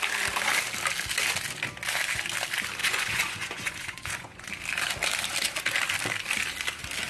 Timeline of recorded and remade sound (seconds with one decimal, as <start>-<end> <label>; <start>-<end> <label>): 0.0-2.8 recorded; 2.8-4.5 remade; 4.5-7.1 recorded